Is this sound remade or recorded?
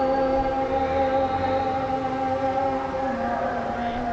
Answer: recorded